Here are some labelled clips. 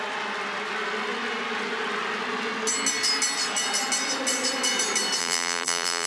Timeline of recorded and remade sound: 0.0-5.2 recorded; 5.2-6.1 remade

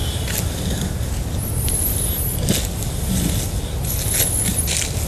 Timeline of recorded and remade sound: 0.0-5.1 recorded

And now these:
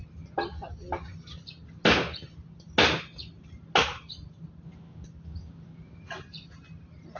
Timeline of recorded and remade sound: 0.0-7.2 recorded

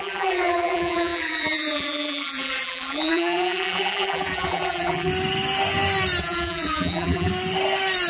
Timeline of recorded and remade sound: 0.0-5.1 remade; 5.1-6.2 recorded; 6.2-7.3 remade; 7.3-8.1 recorded